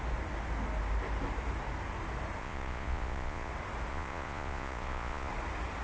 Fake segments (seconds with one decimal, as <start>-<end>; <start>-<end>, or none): 2.4-3.5; 3.9-5.3